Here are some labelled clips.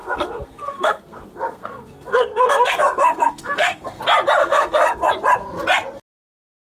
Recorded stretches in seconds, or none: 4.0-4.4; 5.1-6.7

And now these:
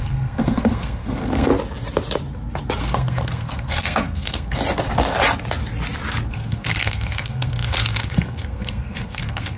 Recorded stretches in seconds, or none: 1.5-2.8; 4.6-6.3

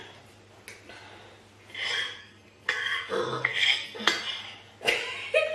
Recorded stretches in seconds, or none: 0.0-2.2; 4.2-5.5

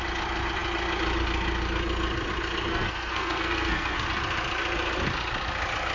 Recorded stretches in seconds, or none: 0.0-2.7; 4.1-5.9

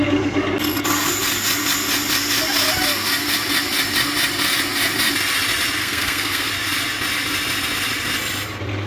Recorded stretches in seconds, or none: 0.0-5.8; 6.5-8.9

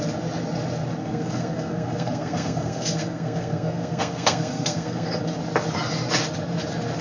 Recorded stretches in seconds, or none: 0.0-1.0; 5.2-7.0